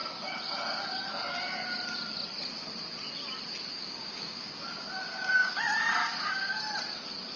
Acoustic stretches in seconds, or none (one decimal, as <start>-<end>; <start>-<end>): 0.0-3.7; 5.6-6.0; 6.6-7.4